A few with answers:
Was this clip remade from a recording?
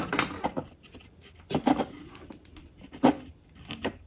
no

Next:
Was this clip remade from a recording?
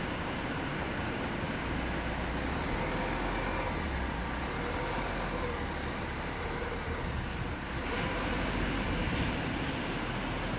no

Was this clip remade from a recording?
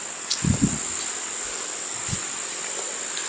no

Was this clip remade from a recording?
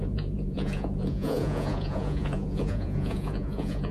yes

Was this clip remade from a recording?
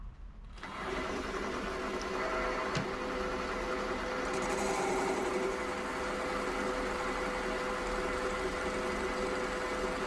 no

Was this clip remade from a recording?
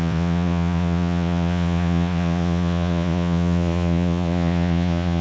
yes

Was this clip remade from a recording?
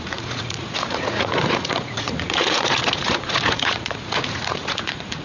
yes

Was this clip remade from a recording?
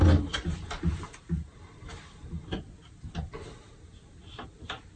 no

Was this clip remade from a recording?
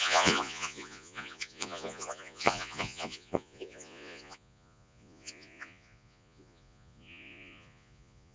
yes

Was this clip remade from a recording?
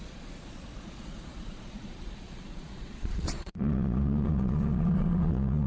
yes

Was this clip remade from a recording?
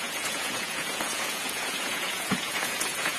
yes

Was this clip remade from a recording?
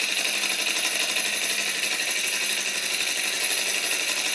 no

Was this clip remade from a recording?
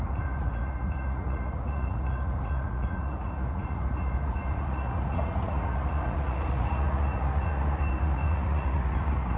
yes